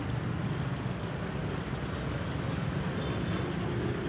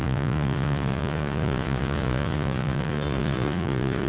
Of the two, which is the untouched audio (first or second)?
first